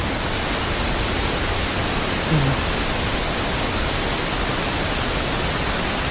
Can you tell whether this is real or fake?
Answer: real